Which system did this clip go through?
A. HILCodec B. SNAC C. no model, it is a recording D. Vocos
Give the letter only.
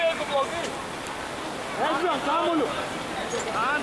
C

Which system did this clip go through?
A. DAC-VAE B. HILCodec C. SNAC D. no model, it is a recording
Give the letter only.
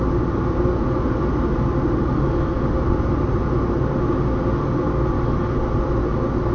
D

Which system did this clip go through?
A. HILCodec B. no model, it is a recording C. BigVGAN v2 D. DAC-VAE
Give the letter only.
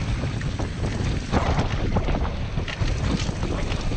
B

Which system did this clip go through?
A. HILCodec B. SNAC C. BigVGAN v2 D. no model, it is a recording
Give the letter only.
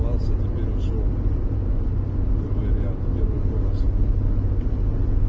D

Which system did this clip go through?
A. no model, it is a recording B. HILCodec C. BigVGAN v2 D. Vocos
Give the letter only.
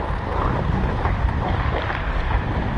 A